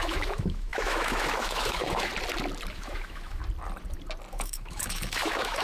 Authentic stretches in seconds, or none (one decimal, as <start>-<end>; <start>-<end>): 2.1-2.7; 3.4-4.3